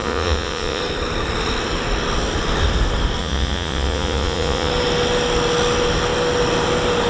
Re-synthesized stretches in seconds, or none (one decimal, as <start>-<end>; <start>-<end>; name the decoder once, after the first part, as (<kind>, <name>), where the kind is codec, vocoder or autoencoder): 0.0-0.8 (vocoder, Vocos); 3.2-4.7

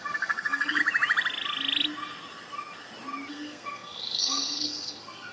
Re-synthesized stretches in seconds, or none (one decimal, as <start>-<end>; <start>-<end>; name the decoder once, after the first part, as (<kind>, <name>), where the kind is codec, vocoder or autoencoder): 0.0-0.8 (codec, SNAC); 3.3-5.3

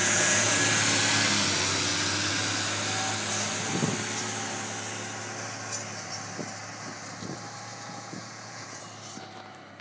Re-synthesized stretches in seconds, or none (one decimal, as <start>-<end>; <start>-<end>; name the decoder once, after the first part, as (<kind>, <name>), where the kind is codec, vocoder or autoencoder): 0.0-0.6 (vocoder, Vocos); 7.7-8.8

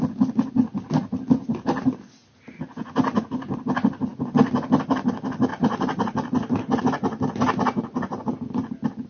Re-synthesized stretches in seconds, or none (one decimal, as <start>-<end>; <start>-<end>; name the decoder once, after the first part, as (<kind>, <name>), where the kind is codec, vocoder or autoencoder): 5.5-6.8 (vocoder, BigVGAN v2)

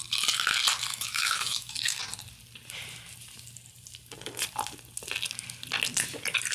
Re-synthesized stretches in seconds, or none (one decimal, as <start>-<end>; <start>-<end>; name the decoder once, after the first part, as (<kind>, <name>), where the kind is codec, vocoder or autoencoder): 0.9-2.0 (autoencoder, DAC-VAE)

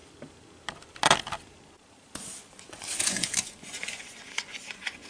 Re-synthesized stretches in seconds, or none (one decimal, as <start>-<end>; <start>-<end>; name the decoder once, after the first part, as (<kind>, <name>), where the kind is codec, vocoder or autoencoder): 3.1-5.1 (vocoder, Vocos)

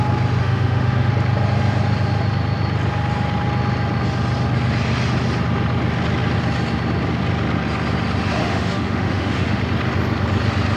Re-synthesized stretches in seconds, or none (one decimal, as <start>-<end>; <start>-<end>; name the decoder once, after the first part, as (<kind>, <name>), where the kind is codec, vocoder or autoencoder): 0.4-1.1 (autoencoder, DAC-VAE); 8.4-9.6

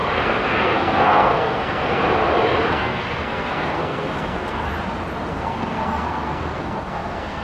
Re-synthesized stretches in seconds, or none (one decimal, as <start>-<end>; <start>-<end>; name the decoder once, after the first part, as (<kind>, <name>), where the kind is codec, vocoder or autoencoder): 0.0-2.0 (codec, SNAC); 2.7-4.7; 5.3-7.4